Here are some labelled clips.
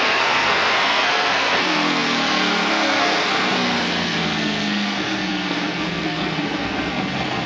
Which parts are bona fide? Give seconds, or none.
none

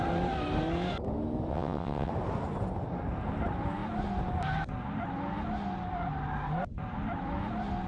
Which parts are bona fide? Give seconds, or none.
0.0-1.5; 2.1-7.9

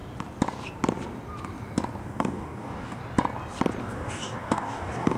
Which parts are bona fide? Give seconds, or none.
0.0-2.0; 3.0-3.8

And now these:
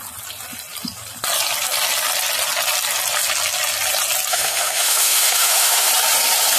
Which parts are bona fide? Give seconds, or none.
0.0-4.3; 5.9-6.6

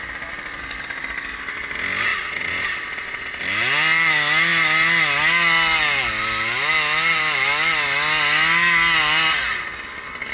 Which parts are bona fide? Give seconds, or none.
0.0-2.1; 3.4-10.3

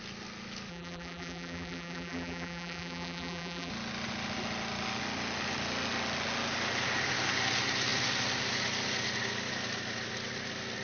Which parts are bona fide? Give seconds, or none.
0.0-0.7; 3.7-10.8